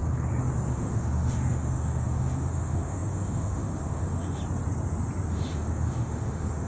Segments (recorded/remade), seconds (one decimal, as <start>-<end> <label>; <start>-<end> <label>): 0.0-0.7 recorded; 0.7-4.4 remade; 4.4-5.3 recorded; 5.3-6.7 remade